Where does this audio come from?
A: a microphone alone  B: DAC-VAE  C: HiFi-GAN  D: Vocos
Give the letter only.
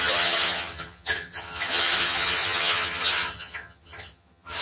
C